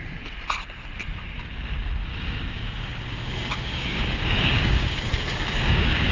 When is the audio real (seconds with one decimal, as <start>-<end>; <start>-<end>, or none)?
0.0-2.1